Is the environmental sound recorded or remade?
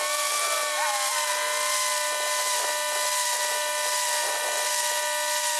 recorded